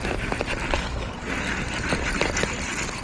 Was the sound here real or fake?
real